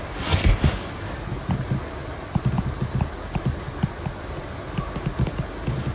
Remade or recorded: recorded